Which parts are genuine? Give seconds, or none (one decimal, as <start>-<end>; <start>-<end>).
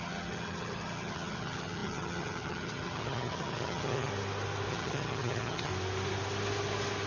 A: 4.1-4.7; 5.7-7.1